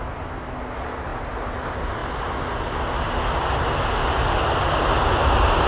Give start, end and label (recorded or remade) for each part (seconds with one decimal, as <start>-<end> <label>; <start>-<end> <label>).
0.0-5.7 recorded